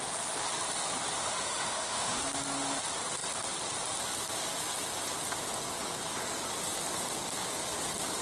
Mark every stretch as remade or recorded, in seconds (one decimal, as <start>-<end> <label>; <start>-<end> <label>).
0.0-1.2 recorded; 1.2-2.2 remade; 2.2-8.2 recorded